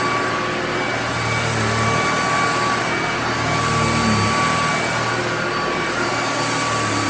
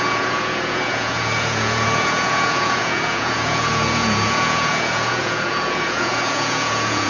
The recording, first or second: first